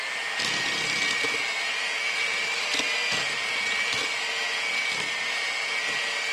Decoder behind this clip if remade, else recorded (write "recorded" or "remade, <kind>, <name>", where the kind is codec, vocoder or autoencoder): recorded